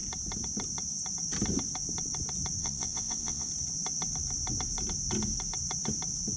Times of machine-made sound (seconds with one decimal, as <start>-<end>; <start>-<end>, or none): 2.6-3.5